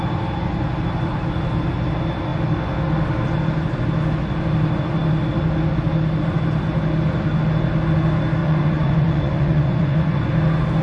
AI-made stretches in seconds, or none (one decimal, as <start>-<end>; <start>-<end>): 8.4-10.3